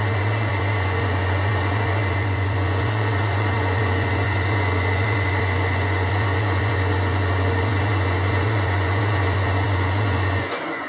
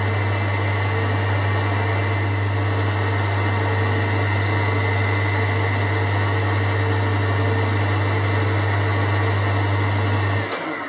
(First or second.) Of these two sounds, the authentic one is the second